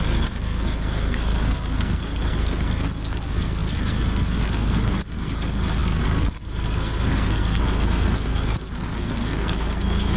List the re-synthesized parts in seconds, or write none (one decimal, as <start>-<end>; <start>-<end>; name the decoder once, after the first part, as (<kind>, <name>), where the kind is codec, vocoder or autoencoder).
0.0-10.2 (codec, SNAC)